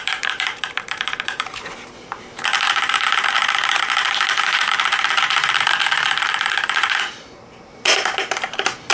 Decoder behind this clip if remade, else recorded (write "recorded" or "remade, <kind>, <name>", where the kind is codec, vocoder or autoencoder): remade, vocoder, BigVGAN v2